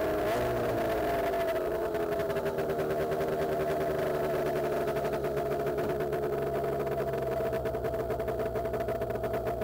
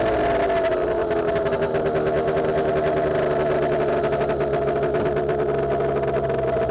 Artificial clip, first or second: first